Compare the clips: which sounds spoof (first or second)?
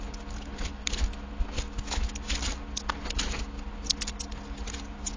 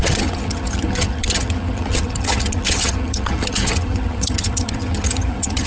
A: second